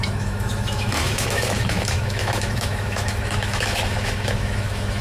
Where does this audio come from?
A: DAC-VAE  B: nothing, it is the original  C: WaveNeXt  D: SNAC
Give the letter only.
A